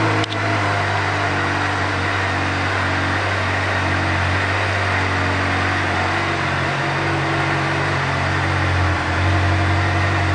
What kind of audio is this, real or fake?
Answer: real